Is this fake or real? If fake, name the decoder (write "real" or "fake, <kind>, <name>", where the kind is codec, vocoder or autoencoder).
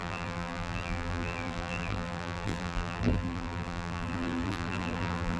fake, vocoder, BigVGAN v2